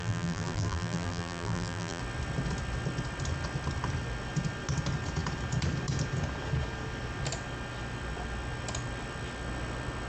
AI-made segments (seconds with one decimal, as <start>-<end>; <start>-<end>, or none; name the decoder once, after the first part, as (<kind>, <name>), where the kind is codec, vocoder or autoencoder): 0.0-2.0 (vocoder, BigVGAN v2)